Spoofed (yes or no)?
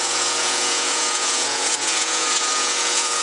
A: yes